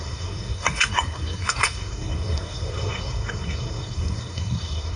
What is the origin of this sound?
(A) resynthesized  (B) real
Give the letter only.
A